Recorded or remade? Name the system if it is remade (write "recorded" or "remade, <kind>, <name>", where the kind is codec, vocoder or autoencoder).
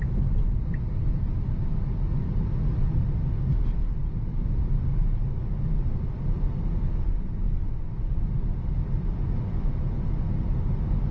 recorded